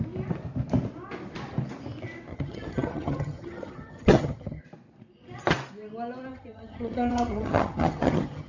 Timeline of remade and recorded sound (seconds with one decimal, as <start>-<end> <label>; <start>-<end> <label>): 0.0-2.3 recorded; 2.3-4.6 remade; 4.6-6.3 recorded; 6.3-8.5 remade

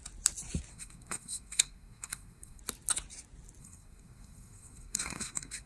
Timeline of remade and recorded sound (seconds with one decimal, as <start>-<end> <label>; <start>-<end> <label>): 0.0-0.7 recorded; 0.7-2.6 remade; 2.6-3.6 recorded; 3.6-5.7 remade